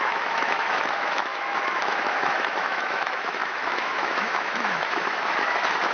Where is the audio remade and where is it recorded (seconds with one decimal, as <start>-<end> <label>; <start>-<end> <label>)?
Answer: 0.0-5.9 remade